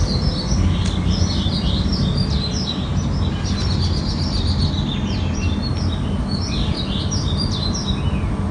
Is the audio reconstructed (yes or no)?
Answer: no